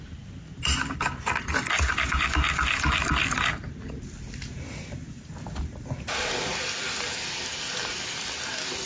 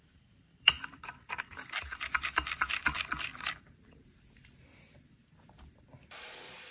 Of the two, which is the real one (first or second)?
first